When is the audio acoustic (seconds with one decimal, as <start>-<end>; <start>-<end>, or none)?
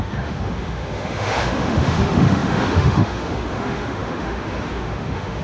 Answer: none